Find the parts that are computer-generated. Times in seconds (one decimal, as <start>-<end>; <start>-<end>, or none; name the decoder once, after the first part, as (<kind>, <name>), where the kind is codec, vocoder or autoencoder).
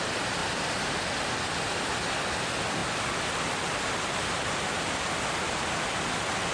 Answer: 0.4-1.0 (vocoder, BigVGAN v2)